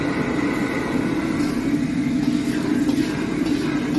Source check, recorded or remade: recorded